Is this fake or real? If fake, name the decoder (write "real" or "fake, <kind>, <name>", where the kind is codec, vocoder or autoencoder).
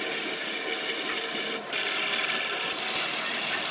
real